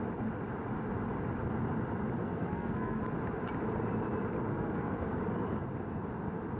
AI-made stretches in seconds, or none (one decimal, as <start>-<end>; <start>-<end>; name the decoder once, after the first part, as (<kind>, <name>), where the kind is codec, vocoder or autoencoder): 2.2-3.0 (codec, SNAC); 4.5-5.2